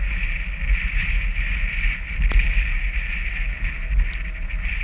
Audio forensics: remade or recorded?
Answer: recorded